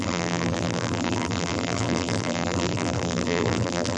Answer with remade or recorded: remade